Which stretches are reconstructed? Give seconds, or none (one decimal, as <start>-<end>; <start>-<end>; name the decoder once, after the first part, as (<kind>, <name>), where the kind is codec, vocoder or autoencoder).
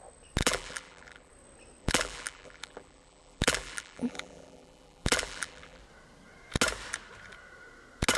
0.4-1.3 (vocoder, BigVGAN v2); 1.8-5.8